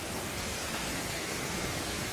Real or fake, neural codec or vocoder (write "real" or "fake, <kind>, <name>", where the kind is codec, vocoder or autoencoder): fake, codec, SNAC